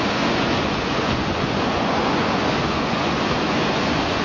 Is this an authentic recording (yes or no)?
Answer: no